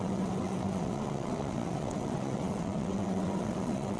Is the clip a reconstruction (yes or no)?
yes